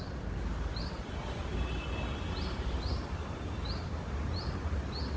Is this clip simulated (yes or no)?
no